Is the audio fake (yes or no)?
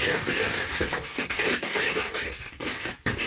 yes